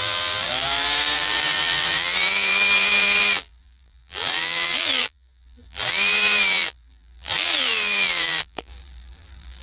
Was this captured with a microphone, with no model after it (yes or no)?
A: no